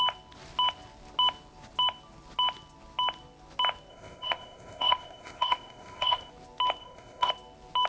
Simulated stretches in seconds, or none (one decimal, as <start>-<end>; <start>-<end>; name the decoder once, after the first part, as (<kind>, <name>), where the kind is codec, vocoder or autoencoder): 3.9-6.3 (codec, ZipCodec); 6.8-7.3